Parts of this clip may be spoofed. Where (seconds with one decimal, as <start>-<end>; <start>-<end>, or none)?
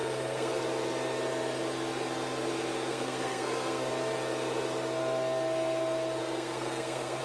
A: 0.0-0.6; 2.9-3.9; 6.2-7.2